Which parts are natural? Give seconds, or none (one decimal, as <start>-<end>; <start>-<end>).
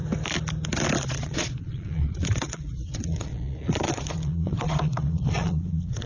0.0-1.1